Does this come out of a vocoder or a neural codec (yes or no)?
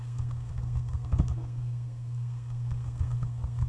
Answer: yes